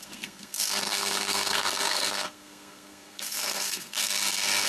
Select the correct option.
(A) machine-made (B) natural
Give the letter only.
A